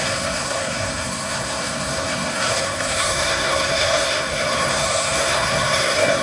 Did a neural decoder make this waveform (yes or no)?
yes